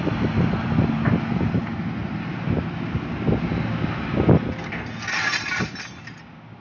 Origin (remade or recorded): recorded